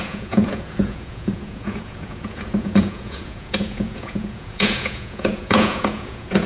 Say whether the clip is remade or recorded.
remade